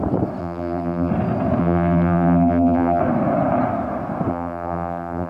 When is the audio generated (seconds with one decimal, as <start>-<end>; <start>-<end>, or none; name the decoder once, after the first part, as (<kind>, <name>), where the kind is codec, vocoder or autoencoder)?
0.4-1.1 (vocoder, BigVGAN v2); 1.6-3.0; 4.3-5.3